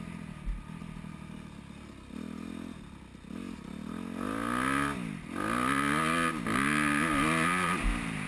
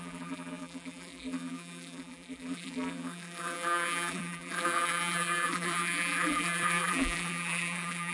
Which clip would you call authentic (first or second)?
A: first